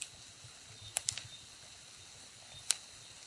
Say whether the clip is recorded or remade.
recorded